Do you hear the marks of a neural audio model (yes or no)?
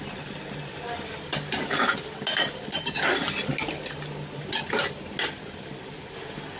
no